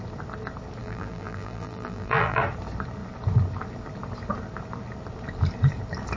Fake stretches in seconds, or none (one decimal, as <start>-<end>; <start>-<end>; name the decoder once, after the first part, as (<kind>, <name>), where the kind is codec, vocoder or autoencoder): 0.8-2.4 (vocoder, BigVGAN v2)